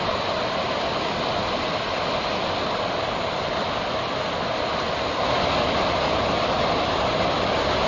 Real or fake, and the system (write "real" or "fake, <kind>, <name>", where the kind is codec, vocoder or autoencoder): real